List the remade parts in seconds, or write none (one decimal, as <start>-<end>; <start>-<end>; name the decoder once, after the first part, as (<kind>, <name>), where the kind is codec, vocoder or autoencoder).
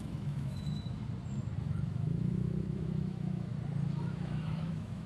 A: 0.0-1.0 (autoencoder, DAC-VAE); 1.6-3.5; 4.1-5.1